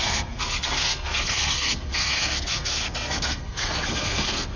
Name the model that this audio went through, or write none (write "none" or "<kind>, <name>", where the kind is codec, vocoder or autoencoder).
codec, SNAC